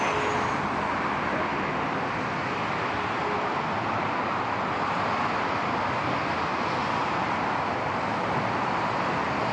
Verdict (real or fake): real